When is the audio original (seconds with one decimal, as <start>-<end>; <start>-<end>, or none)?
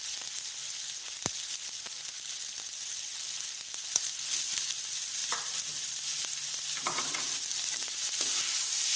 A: 0.0-5.2; 7.2-9.0